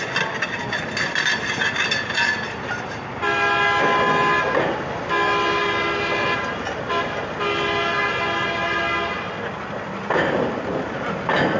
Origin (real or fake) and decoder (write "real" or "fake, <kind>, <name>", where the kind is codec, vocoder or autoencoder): real